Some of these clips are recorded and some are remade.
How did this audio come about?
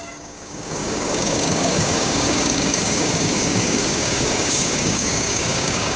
remade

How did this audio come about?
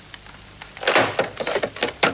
recorded